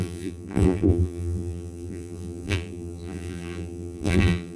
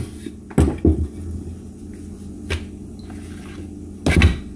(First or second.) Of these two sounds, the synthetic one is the first